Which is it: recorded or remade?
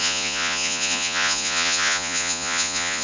remade